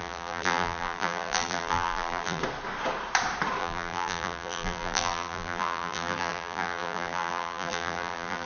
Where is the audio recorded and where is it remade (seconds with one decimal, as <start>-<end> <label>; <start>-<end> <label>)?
0.0-2.4 remade; 2.4-3.6 recorded; 3.6-8.5 remade